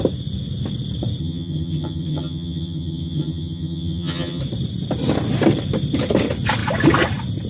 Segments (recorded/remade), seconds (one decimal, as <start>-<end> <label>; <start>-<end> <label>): 0.0-1.2 recorded; 1.2-4.4 remade; 4.4-7.5 recorded